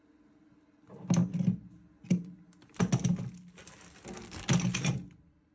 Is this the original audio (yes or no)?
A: yes